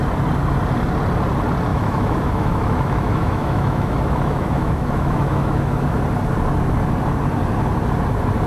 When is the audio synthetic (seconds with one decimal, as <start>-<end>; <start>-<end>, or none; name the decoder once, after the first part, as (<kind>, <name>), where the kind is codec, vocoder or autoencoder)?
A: 1.7-5.9 (autoencoder, DAC-VAE)